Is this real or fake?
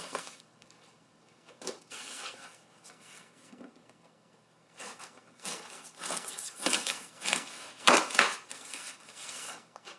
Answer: fake